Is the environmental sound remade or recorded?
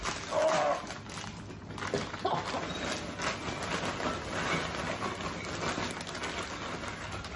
recorded